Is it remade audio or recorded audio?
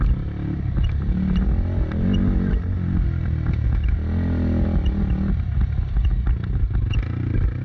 recorded